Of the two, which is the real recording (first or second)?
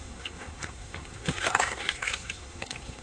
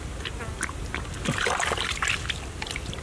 second